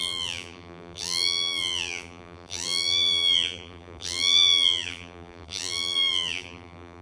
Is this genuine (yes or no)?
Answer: no